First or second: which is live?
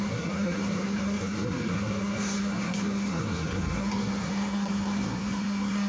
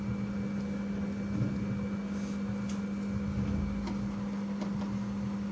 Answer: second